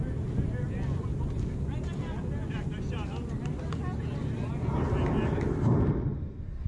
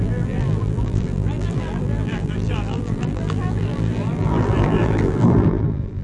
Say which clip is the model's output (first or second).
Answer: second